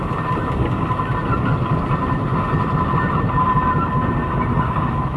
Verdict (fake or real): real